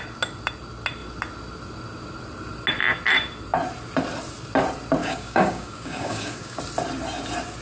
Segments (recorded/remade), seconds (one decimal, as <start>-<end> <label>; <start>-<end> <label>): 0.0-5.0 recorded; 5.0-6.6 remade; 6.6-7.6 recorded